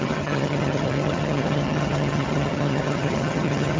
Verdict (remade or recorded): remade